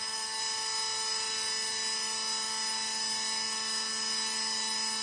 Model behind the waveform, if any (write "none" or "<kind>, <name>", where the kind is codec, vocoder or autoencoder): none